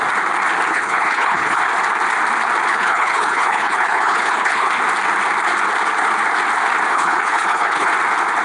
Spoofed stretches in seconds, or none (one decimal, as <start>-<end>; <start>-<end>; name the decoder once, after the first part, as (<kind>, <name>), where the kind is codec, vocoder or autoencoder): 0.7-1.6 (codec, HILCodec); 2.7-4.7; 6.9-7.9